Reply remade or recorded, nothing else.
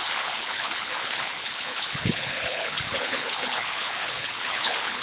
remade